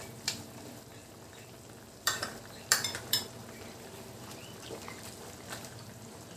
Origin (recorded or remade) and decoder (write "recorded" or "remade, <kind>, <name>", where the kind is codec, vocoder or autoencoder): remade, vocoder, BigVGAN v2